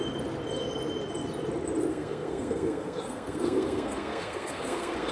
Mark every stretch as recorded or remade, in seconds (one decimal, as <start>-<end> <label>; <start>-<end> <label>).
0.0-1.9 recorded; 1.9-5.1 remade